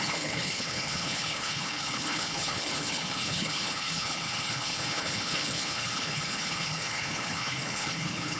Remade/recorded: remade